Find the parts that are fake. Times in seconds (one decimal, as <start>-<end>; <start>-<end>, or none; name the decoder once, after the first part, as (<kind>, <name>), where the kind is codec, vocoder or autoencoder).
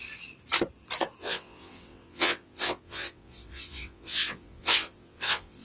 1.2-5.6 (vocoder, WaveNeXt)